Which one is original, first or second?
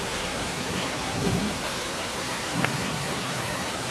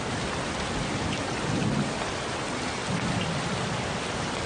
second